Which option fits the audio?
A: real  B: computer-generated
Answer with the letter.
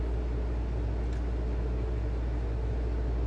A